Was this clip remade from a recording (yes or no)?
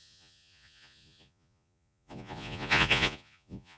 yes